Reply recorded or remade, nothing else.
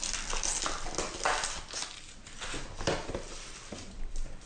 recorded